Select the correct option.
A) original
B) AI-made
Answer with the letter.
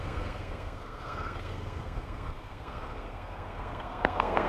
B